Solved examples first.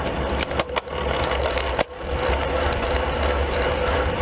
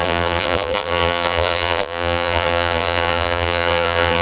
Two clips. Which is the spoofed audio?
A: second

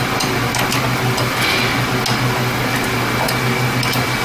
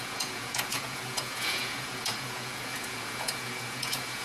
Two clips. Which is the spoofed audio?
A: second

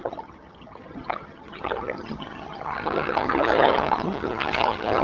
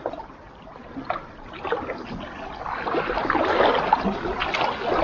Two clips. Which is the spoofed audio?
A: first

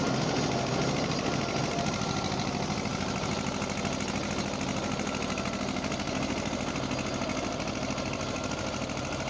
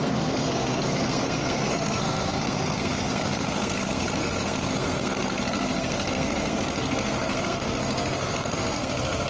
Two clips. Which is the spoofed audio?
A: second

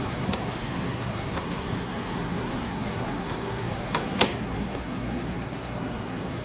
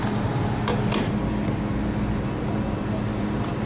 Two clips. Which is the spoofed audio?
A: first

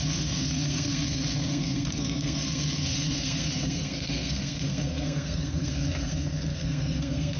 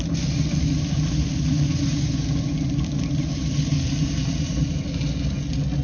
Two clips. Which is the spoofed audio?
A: first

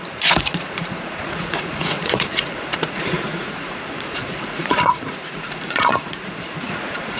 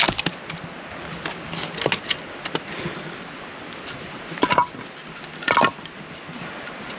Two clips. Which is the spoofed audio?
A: first